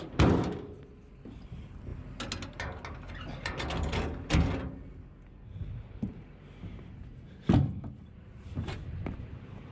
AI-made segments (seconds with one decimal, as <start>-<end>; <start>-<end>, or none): none